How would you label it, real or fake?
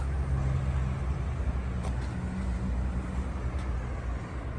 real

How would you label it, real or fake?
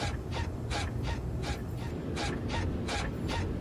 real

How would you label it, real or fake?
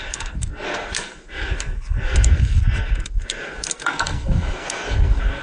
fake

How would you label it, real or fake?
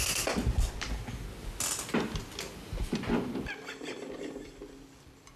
real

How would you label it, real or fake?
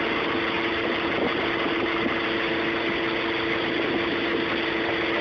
real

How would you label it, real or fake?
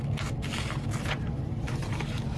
real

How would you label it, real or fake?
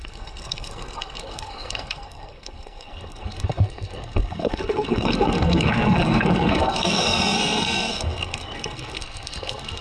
fake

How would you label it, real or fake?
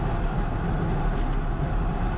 real